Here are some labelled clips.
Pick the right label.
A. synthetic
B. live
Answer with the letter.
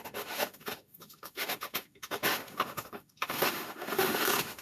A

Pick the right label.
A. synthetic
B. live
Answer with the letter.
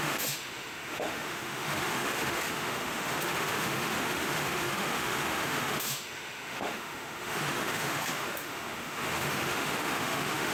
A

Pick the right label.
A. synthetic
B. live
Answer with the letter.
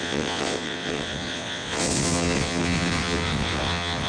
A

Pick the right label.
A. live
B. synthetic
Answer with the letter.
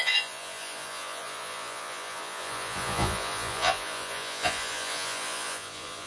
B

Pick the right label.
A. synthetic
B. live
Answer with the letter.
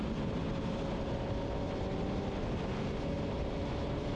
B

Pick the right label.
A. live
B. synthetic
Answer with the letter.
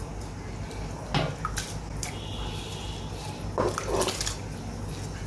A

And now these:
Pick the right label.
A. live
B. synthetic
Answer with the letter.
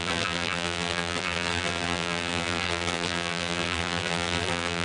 B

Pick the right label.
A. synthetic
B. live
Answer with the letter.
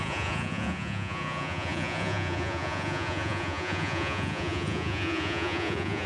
A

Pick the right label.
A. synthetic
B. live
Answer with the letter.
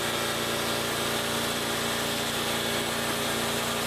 B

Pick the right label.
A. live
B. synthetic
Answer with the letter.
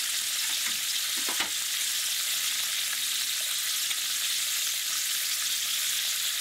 A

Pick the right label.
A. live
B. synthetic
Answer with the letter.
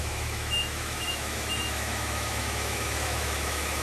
B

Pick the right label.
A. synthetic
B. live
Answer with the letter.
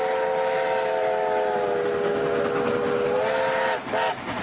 B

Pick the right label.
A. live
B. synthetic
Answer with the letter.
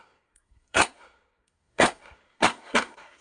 B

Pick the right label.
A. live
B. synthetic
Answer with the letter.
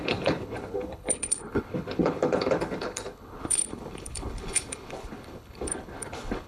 B